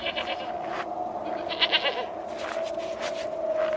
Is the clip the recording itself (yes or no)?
yes